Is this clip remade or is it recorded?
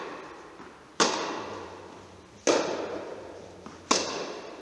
recorded